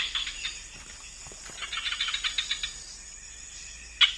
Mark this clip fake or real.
real